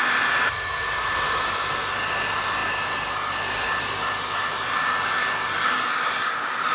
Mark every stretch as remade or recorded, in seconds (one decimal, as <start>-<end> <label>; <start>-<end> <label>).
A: 0.0-6.7 recorded